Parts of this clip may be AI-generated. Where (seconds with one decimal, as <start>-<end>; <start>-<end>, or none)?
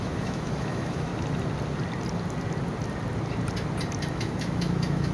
0.0-1.1; 4.1-5.1